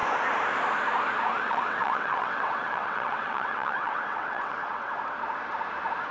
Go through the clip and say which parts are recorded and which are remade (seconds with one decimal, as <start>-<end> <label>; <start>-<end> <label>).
0.0-1.3 recorded; 1.3-4.9 remade; 4.9-6.1 recorded